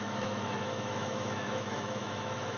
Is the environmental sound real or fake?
fake